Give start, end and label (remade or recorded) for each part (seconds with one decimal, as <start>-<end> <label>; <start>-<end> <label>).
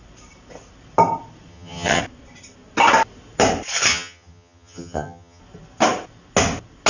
0.0-1.5 recorded; 1.5-2.0 remade; 2.0-3.9 recorded; 3.9-5.4 remade; 5.4-6.9 recorded